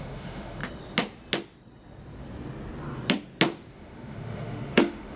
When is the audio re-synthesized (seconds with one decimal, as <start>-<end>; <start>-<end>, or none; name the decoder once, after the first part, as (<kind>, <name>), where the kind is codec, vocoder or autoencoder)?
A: 0.0-0.6 (autoencoder, DAC-VAE); 3.7-5.2